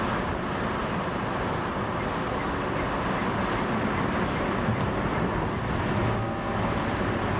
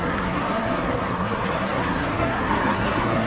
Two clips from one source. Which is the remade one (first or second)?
second